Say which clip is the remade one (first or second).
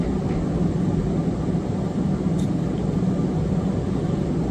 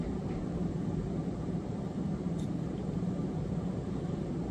second